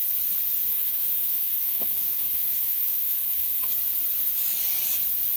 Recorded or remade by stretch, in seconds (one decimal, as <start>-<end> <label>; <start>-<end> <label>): 0.0-0.7 recorded; 0.7-3.7 remade; 3.7-5.4 recorded